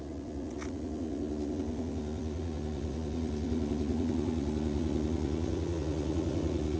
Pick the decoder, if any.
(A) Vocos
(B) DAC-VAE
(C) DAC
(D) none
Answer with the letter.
A